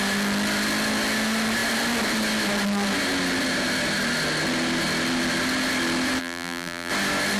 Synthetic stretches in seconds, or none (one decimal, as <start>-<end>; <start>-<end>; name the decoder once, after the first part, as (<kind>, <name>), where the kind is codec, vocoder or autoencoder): 6.2-6.9 (vocoder, BigVGAN v2)